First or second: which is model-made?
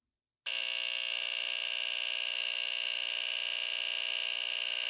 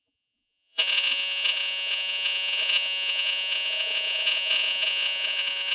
second